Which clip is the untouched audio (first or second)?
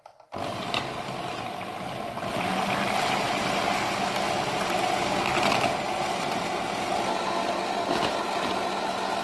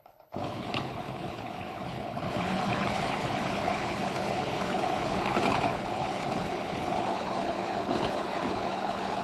first